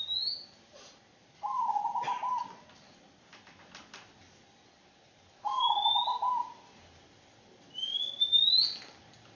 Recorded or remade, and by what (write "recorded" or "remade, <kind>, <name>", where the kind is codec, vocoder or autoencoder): recorded